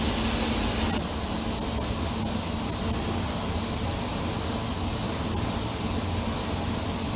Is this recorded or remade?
recorded